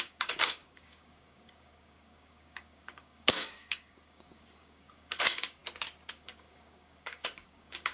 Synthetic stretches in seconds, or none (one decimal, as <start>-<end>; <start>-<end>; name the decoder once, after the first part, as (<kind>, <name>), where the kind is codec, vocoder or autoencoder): 0.0-5.6 (codec, DAC); 6.1-7.9